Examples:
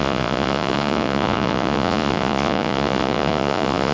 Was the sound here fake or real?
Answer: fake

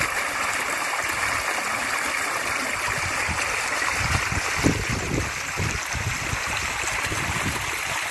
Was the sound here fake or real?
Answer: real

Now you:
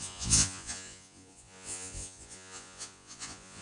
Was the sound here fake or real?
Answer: fake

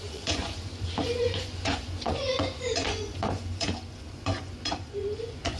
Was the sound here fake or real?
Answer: fake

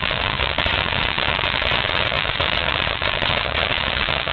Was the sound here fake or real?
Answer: fake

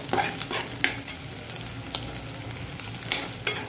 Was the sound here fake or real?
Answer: real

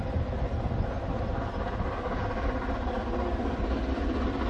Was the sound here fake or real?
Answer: real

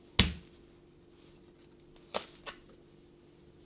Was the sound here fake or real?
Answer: real